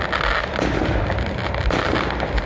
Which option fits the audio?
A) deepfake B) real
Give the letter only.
B